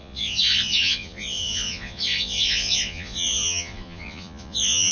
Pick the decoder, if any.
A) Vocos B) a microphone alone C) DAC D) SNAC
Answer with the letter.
A